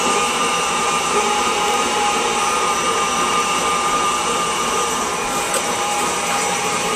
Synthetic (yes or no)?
yes